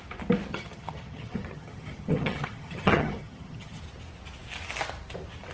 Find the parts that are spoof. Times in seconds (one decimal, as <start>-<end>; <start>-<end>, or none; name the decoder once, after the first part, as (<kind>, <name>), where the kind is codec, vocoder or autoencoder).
0.5-3.8 (vocoder, HiFi-GAN)